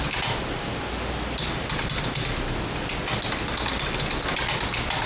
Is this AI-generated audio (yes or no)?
no